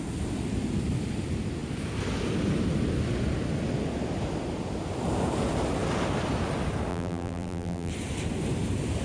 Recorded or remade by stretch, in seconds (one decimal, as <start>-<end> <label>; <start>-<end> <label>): 0.0-6.9 recorded; 6.9-7.9 remade; 7.9-9.0 recorded

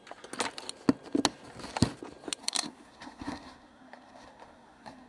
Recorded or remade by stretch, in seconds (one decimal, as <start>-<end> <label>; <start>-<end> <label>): 0.0-2.4 recorded; 2.4-5.1 remade

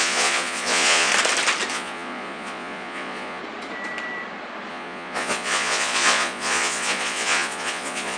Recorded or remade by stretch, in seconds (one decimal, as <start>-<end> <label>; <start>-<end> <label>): 0.0-1.1 remade; 1.1-1.7 recorded; 1.7-3.4 remade; 3.4-4.7 recorded; 4.7-8.2 remade